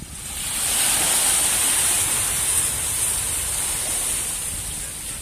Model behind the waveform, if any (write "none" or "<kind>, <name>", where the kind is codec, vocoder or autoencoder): none